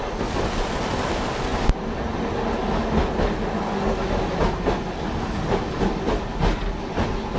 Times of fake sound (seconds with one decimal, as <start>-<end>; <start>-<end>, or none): none